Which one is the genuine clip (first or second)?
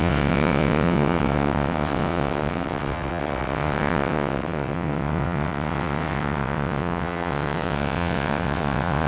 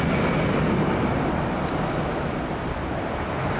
second